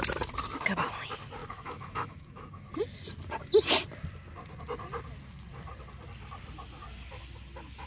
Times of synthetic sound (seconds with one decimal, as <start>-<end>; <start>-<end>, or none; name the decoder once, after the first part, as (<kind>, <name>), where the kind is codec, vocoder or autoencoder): 1.4-2.7 (autoencoder, DAC-VAE)